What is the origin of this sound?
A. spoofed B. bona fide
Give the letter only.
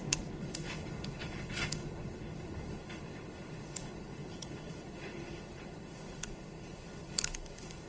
A